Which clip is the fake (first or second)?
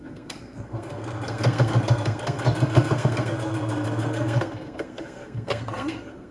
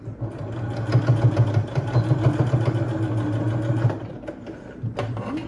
first